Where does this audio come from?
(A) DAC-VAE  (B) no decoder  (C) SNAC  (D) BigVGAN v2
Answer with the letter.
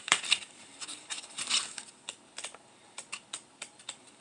D